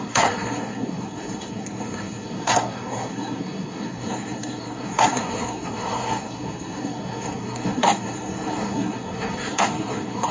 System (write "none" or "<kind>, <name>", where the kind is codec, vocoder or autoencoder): codec, SNAC